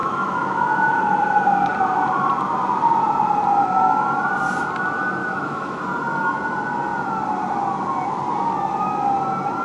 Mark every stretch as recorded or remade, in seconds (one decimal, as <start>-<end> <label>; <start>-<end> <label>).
0.0-1.0 remade; 1.0-5.2 recorded; 5.2-5.8 remade; 5.8-9.6 recorded